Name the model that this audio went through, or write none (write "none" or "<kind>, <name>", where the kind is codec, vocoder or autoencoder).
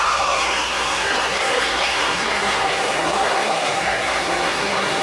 codec, SNAC